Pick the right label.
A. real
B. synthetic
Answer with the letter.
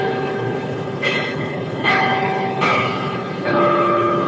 B